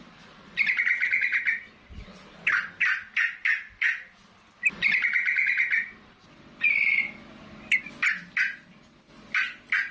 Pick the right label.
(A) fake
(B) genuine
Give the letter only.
B